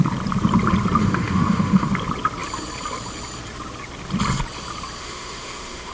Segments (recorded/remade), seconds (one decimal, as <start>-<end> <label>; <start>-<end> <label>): 0.0-1.0 recorded; 1.0-1.9 remade; 1.9-5.0 recorded; 5.0-5.9 remade

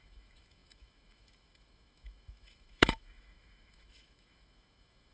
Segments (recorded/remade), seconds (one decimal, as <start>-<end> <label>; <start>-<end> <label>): 0.0-5.1 remade

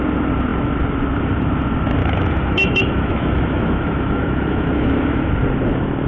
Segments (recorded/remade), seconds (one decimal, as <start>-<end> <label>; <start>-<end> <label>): 0.0-2.0 recorded; 2.0-5.3 remade; 5.3-6.1 recorded

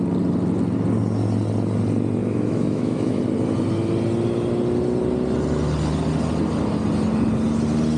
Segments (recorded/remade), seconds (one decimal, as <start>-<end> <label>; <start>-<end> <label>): 0.0-2.2 recorded; 2.2-3.2 remade; 3.2-8.0 recorded

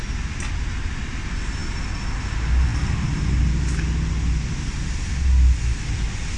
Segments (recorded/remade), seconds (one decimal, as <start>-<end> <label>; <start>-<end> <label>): 0.0-6.4 recorded

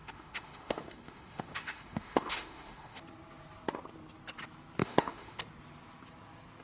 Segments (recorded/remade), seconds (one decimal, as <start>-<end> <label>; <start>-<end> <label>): 0.0-3.0 remade; 3.0-4.8 recorded; 4.8-5.4 remade; 5.4-6.6 recorded

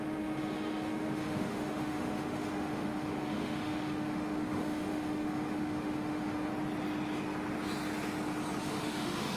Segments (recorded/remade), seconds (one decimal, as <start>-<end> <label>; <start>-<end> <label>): 0.0-6.5 remade; 6.5-8.6 recorded; 8.6-9.4 remade